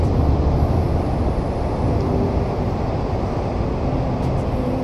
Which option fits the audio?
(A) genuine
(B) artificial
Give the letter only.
A